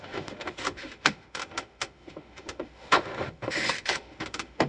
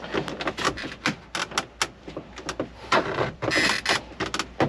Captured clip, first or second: second